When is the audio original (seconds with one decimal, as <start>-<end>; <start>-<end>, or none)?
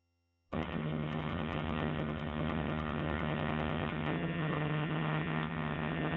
none